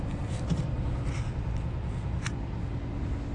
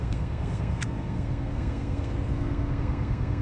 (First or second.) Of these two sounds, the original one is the first